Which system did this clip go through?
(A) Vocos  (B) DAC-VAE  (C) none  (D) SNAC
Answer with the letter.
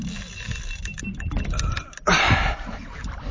C